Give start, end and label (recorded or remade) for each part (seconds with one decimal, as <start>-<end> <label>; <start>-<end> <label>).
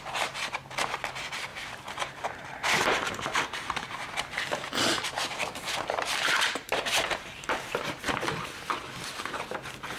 0.0-1.5 recorded; 1.5-4.7 remade; 4.7-5.4 recorded; 5.4-8.0 remade; 8.0-10.0 recorded